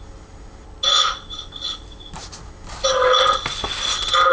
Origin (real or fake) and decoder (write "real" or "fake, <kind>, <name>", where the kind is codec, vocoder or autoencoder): real